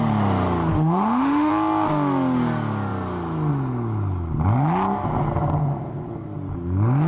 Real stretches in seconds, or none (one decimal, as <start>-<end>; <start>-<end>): 0.0-0.7; 1.5-7.1